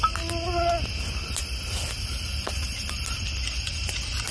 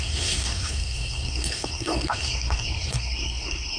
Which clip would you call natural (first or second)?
first